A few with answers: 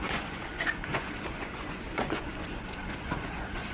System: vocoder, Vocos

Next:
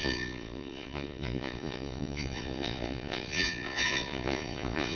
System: vocoder, Vocos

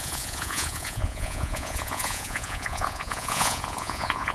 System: vocoder, Vocos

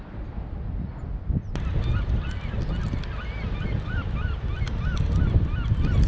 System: none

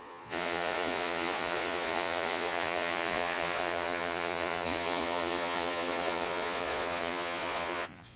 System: vocoder, Vocos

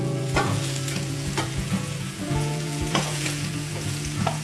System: vocoder, Vocos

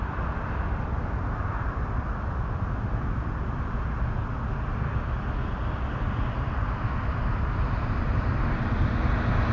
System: none